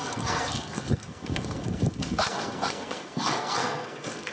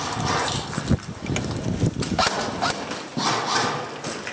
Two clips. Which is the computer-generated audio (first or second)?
first